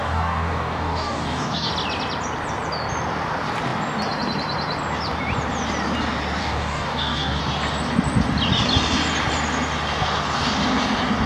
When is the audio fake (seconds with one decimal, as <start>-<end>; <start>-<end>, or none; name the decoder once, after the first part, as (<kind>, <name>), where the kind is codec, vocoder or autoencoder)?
0.0-1.7 (codec, DAC); 6.4-7.4